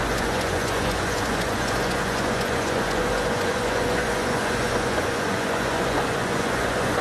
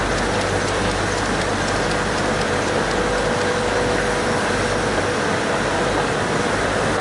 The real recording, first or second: second